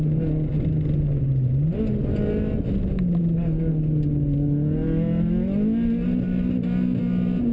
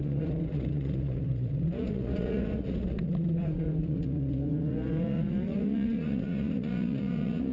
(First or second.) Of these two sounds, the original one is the first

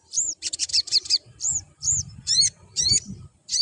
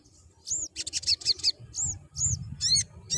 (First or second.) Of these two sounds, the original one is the second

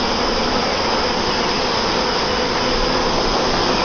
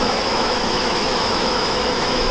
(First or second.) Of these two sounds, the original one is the first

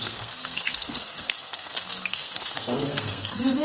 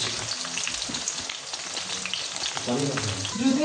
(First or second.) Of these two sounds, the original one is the second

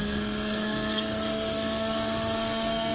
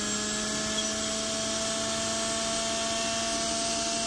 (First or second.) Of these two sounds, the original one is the second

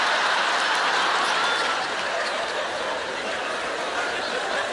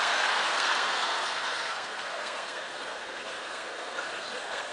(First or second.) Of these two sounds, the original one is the first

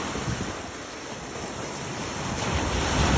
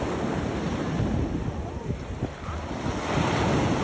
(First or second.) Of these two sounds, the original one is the second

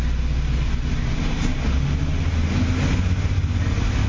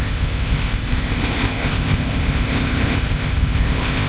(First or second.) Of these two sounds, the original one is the first